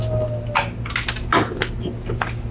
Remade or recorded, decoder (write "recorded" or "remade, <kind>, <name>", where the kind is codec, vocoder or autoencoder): recorded